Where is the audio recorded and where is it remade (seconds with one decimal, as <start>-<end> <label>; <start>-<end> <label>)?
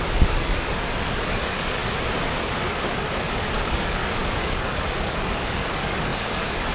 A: 0.0-1.8 remade; 1.8-2.4 recorded; 2.4-6.7 remade